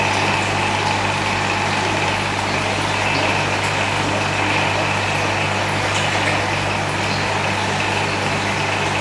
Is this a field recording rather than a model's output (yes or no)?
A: yes